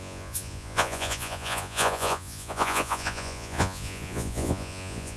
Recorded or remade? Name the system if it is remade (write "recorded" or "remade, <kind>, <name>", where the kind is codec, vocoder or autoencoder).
remade, vocoder, Vocos